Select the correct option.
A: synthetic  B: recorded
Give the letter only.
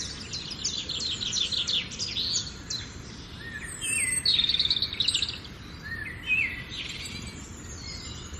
B